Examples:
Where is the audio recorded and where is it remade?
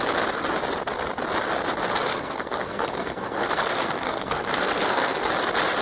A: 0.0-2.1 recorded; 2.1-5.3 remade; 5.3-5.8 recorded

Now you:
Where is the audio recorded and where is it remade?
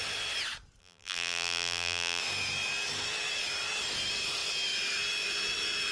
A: 0.0-0.8 recorded; 0.8-2.2 remade; 2.2-5.9 recorded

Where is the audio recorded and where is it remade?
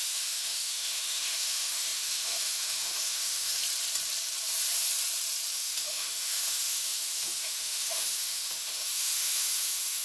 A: 0.0-3.6 remade; 3.6-5.5 recorded; 5.5-10.0 remade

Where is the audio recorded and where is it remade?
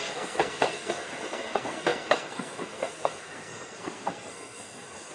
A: 0.0-5.1 remade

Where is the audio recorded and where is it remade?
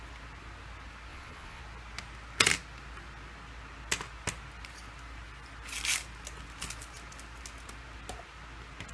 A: 0.0-1.1 recorded; 1.1-1.6 remade; 1.6-8.9 recorded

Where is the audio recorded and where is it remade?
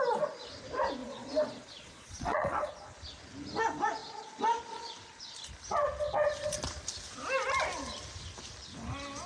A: 0.0-1.0 recorded; 1.0-2.7 remade; 2.7-9.3 recorded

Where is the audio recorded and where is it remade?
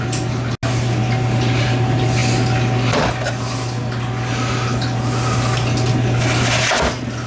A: 0.0-7.3 recorded